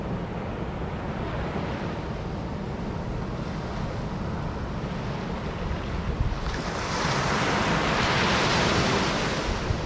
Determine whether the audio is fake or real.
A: real